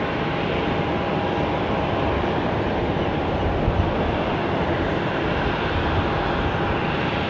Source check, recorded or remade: recorded